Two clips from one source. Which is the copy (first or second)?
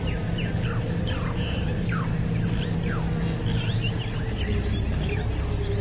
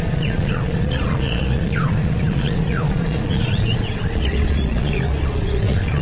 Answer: second